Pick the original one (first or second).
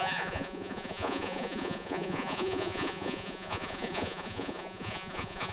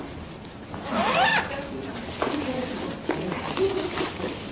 second